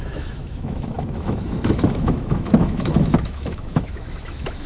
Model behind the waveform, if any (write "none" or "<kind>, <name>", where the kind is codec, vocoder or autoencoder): autoencoder, DAC-VAE